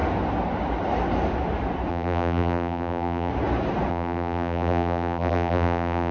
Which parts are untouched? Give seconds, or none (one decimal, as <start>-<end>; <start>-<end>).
0.0-1.9; 3.3-3.9